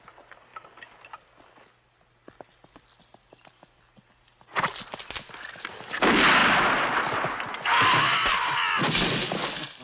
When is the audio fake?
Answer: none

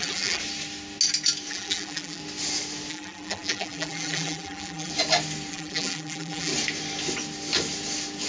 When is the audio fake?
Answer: 0.0-0.4 (vocoder, BigVGAN v2); 1.5-2.2; 2.9-4.9; 5.5-6.5

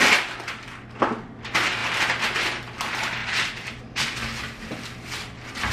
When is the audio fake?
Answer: 3.2-3.8 (vocoder, BigVGAN v2)